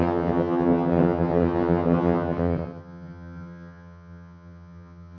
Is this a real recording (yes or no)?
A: no